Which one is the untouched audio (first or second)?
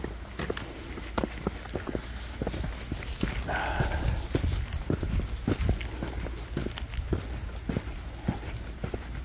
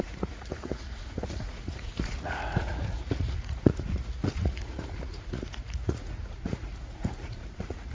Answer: first